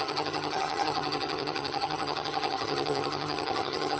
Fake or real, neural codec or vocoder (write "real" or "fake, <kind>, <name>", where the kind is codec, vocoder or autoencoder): fake, vocoder, HiFi-GAN